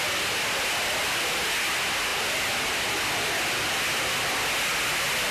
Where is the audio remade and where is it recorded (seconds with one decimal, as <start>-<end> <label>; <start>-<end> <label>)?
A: 0.0-2.1 recorded; 2.1-3.0 remade; 3.0-5.3 recorded